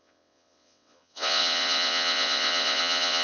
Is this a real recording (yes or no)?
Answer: no